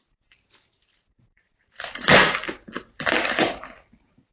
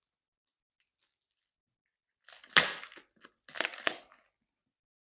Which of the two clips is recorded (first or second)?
second